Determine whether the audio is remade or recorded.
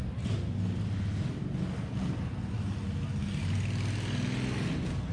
recorded